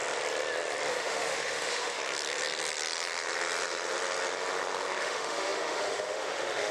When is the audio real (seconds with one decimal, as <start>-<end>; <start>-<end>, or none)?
0.0-0.9; 2.0-5.0